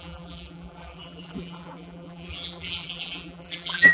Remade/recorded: remade